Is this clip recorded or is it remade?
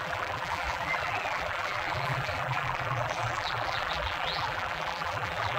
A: remade